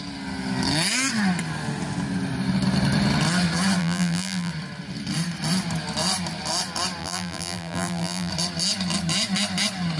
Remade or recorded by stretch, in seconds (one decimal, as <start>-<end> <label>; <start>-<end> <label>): 0.0-3.8 recorded; 3.8-4.5 remade; 4.5-7.0 recorded; 7.0-8.3 remade; 8.3-10.0 recorded

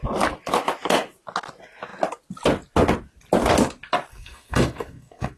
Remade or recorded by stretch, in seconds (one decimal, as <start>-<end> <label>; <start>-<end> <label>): 0.0-4.1 recorded; 4.1-5.4 remade

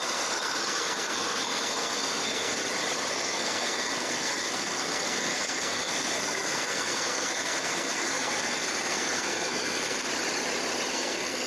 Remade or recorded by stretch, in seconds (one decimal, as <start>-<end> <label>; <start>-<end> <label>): 0.0-2.6 remade; 2.6-3.1 recorded; 3.1-10.1 remade; 10.1-10.9 recorded; 10.9-11.5 remade

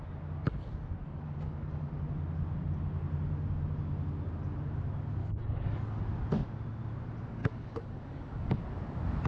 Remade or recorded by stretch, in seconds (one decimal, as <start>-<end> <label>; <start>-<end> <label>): 0.0-1.0 recorded; 1.0-1.9 remade; 1.9-5.2 recorded; 5.2-6.0 remade; 6.0-7.4 recorded; 7.4-8.6 remade; 8.6-9.3 recorded